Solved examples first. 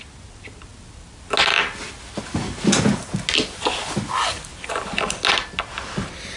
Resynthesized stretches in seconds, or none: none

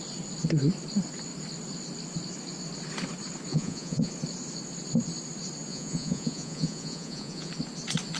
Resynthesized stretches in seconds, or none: 3.5-4.1 (vocoder, Vocos); 5.7-7.5